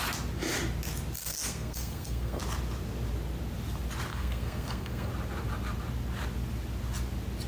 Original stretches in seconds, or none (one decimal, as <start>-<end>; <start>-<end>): 0.0-1.2; 2.4-4.1; 5.1-7.5